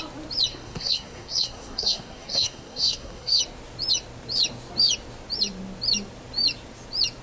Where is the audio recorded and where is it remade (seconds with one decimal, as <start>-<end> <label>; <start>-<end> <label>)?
0.0-0.5 recorded; 0.5-3.4 remade; 3.4-7.2 recorded